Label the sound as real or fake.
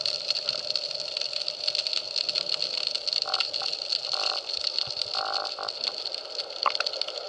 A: real